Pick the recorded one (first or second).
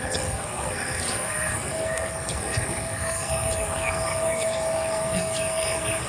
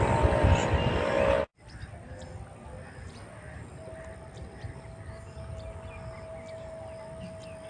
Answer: second